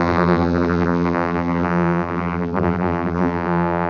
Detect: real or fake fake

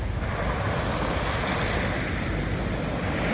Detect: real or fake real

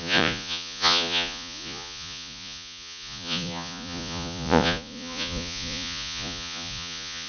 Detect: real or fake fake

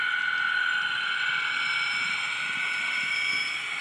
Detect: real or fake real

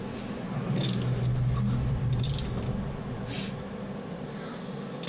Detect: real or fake real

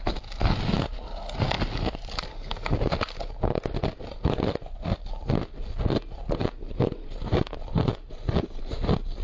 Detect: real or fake real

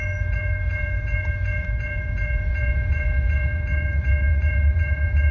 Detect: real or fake fake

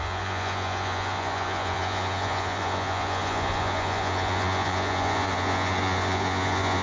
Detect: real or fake fake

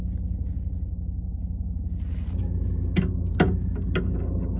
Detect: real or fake real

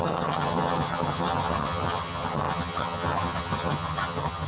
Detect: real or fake fake